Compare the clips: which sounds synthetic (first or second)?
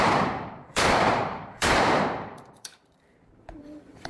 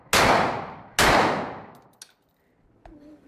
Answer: first